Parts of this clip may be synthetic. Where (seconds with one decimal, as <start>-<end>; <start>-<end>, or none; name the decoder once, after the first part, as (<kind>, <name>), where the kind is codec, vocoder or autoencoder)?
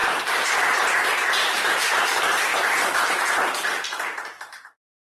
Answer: 0.0-0.8 (vocoder, BigVGAN v2); 1.4-2.1